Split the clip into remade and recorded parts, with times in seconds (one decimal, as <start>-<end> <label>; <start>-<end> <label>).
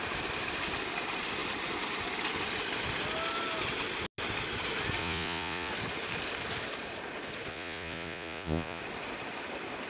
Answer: 0.0-5.0 recorded; 5.0-5.7 remade; 5.7-7.5 recorded; 7.5-8.8 remade; 8.8-9.9 recorded